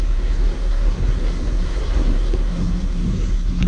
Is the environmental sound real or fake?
fake